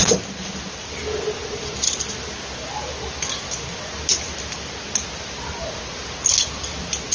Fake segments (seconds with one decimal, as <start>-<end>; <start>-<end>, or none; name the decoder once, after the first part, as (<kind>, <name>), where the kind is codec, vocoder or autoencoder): none